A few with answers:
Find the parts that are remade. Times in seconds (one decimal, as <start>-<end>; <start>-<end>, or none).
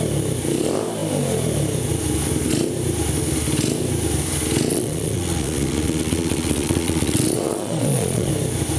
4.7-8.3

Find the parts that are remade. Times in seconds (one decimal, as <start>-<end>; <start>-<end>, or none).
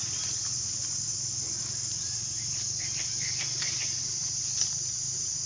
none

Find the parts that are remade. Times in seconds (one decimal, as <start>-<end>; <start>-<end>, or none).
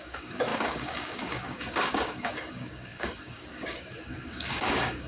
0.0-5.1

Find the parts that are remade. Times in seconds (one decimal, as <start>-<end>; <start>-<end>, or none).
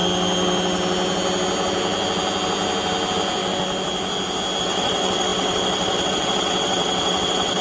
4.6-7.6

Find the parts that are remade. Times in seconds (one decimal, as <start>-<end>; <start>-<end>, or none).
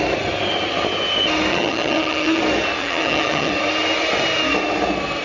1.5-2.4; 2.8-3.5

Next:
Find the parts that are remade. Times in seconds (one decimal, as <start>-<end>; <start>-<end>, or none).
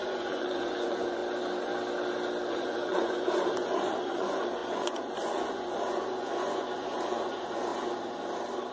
0.0-1.2; 2.5-7.7